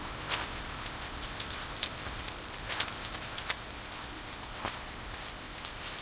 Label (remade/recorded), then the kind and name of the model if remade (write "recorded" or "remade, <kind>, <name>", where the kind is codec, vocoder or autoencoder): remade, codec, ZipCodec